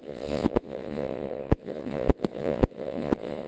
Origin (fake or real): fake